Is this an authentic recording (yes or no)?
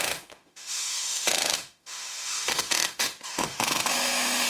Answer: no